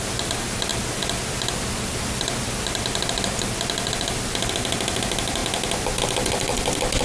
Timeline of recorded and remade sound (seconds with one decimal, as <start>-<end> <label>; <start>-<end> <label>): 0.0-7.0 recorded